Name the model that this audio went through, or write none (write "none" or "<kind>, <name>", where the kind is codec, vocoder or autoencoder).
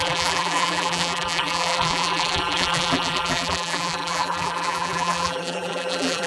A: vocoder, BigVGAN v2